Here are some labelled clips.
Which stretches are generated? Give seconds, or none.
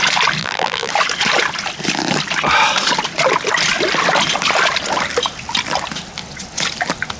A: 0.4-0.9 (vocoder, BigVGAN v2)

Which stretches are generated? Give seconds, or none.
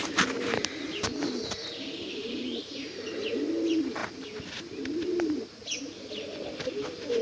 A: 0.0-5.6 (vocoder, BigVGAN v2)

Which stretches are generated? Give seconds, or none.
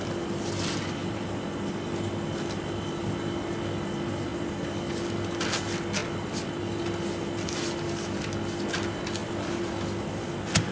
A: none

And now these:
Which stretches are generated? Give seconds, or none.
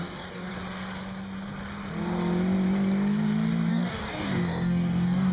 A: 0.0-0.5 (codec, DAC); 3.7-5.3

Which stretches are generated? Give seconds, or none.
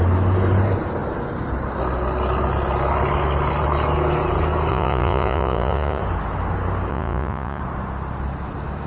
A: 4.7-6.0 (vocoder, Vocos); 6.9-7.6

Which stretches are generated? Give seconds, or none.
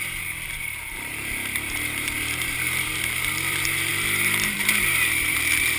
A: 0.0-5.8 (vocoder, BigVGAN v2)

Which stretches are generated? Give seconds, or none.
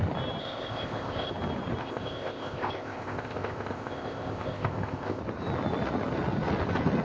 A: 0.4-1.3 (codec, ZipCodec); 1.8-5.2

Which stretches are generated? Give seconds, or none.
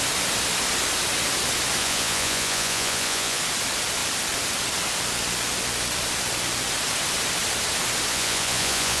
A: 1.8-3.4 (vocoder, Vocos); 8.1-9.0